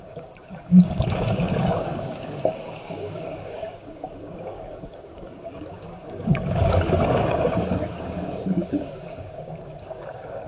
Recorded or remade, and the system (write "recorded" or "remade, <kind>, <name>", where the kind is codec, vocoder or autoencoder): remade, codec, DAC